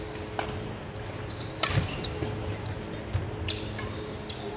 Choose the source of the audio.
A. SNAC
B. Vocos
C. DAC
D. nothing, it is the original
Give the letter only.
D